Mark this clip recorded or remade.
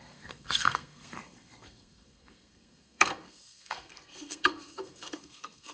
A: remade